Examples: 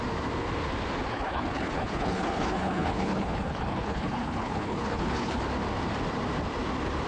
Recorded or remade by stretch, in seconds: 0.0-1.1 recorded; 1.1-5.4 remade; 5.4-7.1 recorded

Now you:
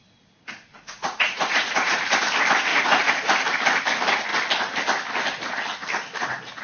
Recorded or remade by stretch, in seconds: 0.0-0.7 recorded; 0.7-2.0 remade; 2.0-2.7 recorded; 2.7-3.4 remade; 3.4-6.6 recorded

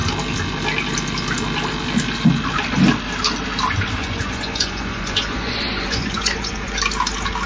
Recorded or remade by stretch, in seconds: 0.0-4.0 recorded; 4.0-6.9 remade; 6.9-7.5 recorded

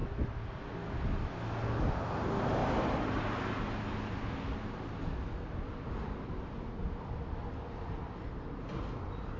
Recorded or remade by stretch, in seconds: 0.0-9.4 recorded

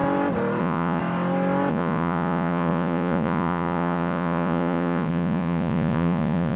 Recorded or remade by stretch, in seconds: 0.0-0.6 recorded; 0.6-1.0 remade; 1.0-1.7 recorded; 1.7-6.6 remade

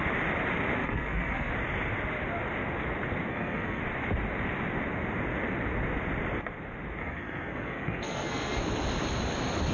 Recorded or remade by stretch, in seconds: 0.0-0.8 recorded; 0.8-1.5 remade; 1.5-3.3 recorded; 3.3-3.8 remade; 3.8-7.0 recorded; 7.0-8.6 remade; 8.6-9.7 recorded

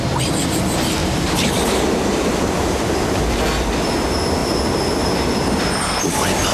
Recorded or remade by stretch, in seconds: 0.0-1.0 recorded; 1.0-3.4 remade; 3.4-6.5 recorded